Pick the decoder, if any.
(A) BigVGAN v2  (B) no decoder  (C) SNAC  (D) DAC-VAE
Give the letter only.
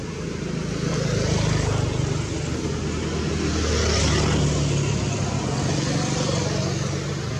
B